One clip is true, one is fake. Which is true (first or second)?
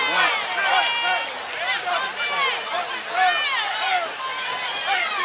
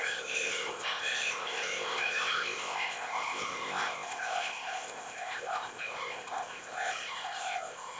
first